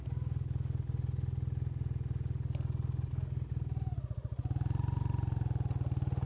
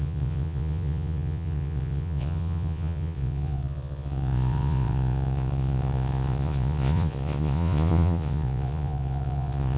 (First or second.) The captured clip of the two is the first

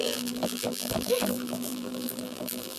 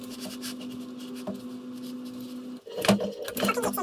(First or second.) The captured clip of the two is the second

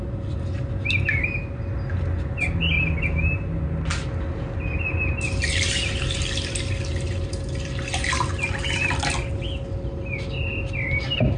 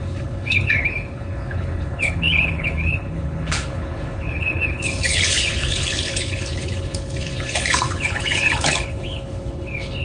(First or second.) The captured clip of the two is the first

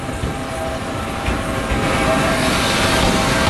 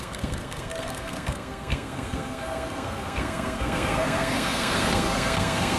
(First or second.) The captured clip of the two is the first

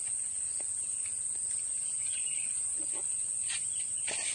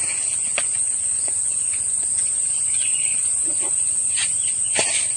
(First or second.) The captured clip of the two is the first